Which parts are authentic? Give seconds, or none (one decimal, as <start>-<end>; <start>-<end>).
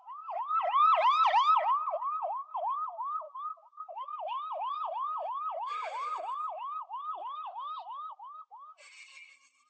0.0-0.8; 1.5-2.4; 7.2-9.7